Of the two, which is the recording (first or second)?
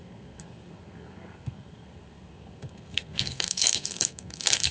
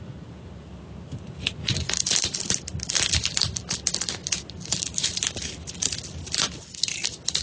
second